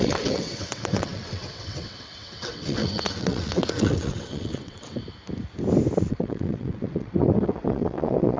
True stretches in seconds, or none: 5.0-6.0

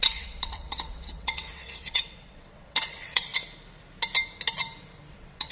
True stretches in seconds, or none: 3.3-5.1

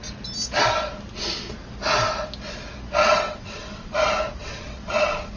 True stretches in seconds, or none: 0.0-3.0; 3.9-4.4

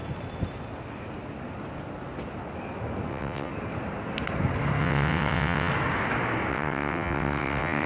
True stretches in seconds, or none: 0.0-3.1; 3.5-4.8; 5.7-6.5